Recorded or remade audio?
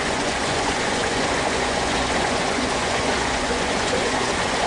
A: remade